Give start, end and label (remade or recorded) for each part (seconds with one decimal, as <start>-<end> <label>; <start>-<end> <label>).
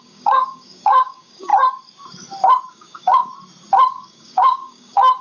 0.0-1.5 remade; 1.5-2.7 recorded; 2.7-3.3 remade; 3.3-3.9 recorded; 3.9-5.2 remade